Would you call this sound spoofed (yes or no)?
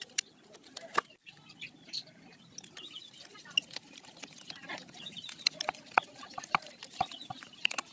no